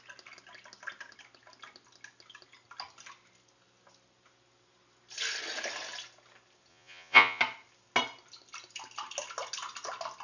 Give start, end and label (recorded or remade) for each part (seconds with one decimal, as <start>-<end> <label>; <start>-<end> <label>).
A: 0.0-6.7 recorded; 6.7-7.4 remade; 7.4-10.2 recorded